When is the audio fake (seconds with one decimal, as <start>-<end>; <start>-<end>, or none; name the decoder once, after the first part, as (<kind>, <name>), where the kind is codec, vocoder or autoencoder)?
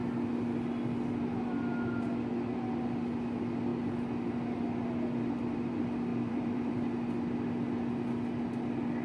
6.1-6.8 (vocoder, BigVGAN v2)